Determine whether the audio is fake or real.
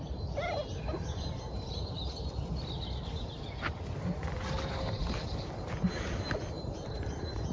real